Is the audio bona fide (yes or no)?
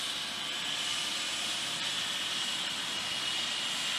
yes